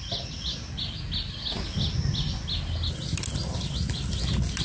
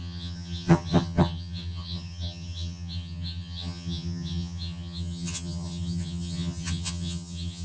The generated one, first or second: second